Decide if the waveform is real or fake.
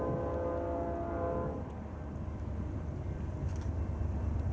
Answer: real